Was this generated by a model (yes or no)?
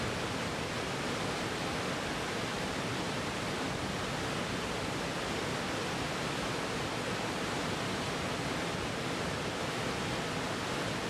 no